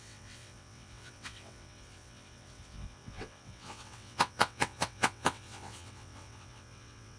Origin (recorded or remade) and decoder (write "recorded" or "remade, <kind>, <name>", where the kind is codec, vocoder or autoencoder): remade, vocoder, WaveNeXt